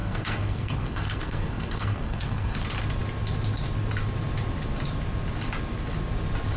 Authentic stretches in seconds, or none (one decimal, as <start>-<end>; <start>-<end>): 2.6-6.6